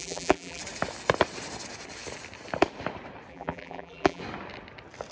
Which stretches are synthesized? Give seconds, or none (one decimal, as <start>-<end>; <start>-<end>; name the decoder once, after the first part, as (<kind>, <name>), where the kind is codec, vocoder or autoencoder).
0.0-0.6 (vocoder, BigVGAN v2); 3.3-4.2